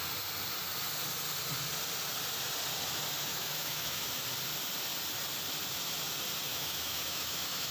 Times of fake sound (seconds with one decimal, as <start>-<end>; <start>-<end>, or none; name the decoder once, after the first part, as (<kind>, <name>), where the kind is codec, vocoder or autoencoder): 3.3-4.1 (autoencoder, DAC-VAE); 6.5-7.7